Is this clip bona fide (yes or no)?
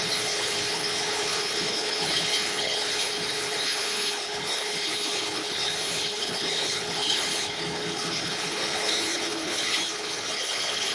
no